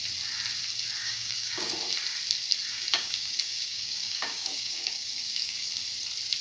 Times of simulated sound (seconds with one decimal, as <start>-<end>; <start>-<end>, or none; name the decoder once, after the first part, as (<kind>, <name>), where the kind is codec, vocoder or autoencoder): 1.0-1.7 (codec, DAC); 2.7-5.7